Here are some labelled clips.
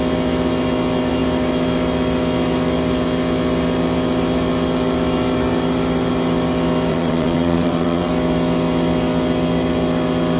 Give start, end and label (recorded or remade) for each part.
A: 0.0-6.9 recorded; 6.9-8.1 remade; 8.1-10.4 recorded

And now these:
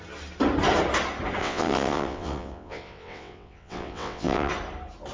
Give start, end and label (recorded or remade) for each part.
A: 0.0-1.4 recorded; 1.4-4.5 remade; 4.5-5.1 recorded

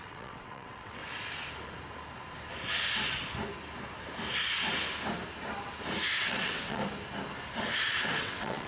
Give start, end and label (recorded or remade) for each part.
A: 0.0-1.0 remade; 1.0-6.2 recorded; 6.2-6.8 remade; 6.8-8.2 recorded; 8.2-8.7 remade

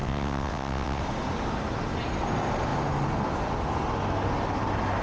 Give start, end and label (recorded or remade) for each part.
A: 0.0-1.0 remade; 1.0-5.0 recorded

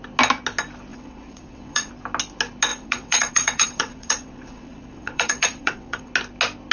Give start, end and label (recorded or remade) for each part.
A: 0.0-0.9 recorded; 0.9-1.9 remade; 1.9-2.7 recorded; 2.7-6.1 remade; 6.1-6.7 recorded